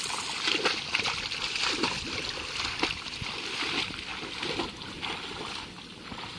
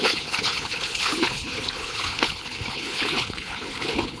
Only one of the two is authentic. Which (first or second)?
first